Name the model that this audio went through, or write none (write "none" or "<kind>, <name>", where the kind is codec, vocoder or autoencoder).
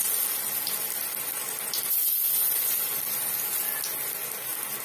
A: none